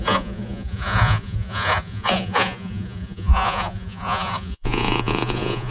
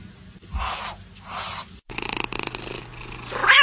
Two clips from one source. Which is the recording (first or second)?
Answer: second